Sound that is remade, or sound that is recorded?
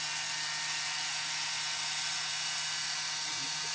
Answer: recorded